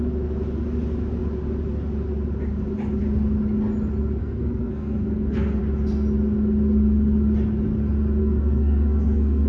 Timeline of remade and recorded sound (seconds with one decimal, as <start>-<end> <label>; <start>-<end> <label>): 0.0-4.2 recorded; 4.2-5.6 remade; 5.6-8.2 recorded; 8.2-9.5 remade